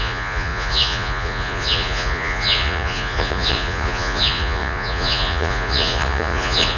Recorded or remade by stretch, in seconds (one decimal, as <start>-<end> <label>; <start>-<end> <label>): 0.0-6.8 remade

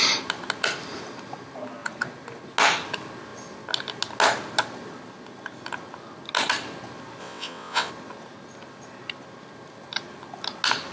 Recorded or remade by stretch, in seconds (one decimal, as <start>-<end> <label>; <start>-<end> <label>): 0.0-7.2 recorded; 7.2-7.9 remade; 7.9-10.9 recorded